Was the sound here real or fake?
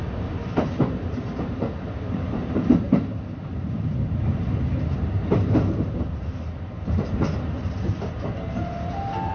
fake